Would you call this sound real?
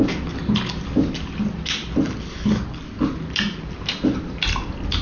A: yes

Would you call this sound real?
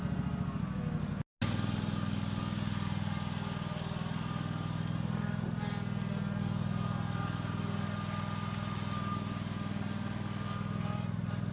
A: yes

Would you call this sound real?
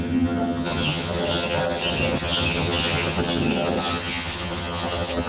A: no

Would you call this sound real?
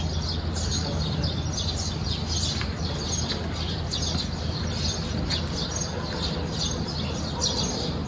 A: yes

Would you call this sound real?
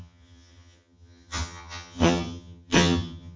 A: no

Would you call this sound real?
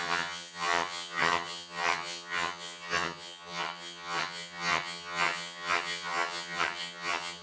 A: no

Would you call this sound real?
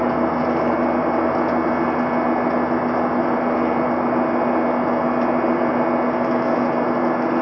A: yes